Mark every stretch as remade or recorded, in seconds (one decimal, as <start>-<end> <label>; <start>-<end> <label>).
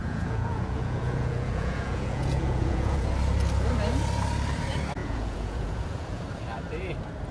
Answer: 0.0-3.1 remade; 3.1-5.0 recorded; 5.0-6.2 remade; 6.2-7.3 recorded